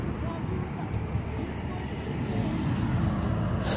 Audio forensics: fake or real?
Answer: real